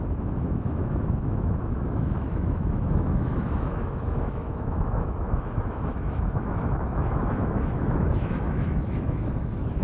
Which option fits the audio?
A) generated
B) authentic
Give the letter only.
A